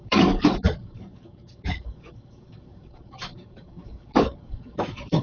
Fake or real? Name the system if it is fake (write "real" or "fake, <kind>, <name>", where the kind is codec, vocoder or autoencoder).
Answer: fake, codec, DAC